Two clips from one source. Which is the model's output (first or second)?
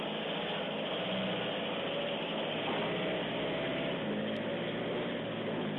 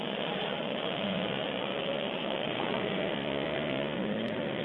second